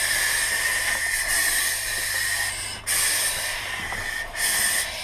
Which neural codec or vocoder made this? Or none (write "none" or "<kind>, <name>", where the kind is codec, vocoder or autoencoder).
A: none